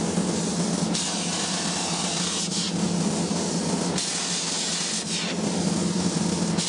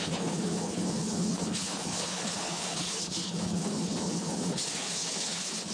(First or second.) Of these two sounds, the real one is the first